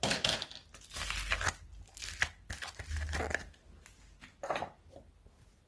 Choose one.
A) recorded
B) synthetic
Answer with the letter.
A